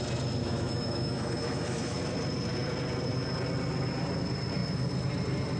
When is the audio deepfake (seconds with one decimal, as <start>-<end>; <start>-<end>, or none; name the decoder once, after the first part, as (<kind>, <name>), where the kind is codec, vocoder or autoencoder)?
0.4-2.0 (autoencoder, DAC-VAE)

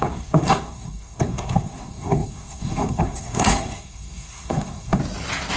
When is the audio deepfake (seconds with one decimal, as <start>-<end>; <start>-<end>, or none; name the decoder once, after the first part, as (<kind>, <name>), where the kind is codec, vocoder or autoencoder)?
0.0-5.0 (codec, SNAC)

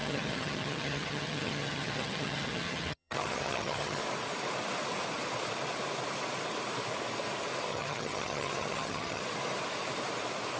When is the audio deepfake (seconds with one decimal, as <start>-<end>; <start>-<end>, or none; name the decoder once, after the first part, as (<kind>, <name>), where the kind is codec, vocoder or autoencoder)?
0.0-4.0 (vocoder, HiFi-GAN); 7.7-9.2

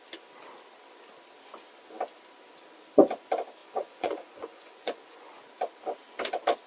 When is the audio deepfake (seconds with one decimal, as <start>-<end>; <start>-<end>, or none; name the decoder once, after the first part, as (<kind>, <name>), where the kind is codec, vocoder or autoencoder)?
3.6-5.3 (vocoder, Vocos)

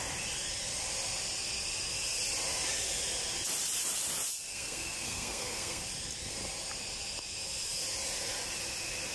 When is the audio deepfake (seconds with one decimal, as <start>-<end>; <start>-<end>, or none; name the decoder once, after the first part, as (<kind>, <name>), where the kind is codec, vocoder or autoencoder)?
4.5-5.8 (codec, SNAC)

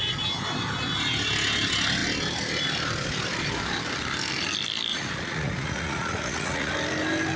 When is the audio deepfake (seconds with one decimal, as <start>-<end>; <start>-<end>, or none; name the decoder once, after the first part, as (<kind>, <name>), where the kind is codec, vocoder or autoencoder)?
4.9-6.7 (vocoder, Vocos)